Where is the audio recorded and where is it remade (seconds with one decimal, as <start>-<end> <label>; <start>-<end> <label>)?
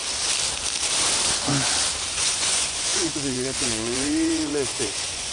0.0-2.1 recorded; 2.1-5.3 remade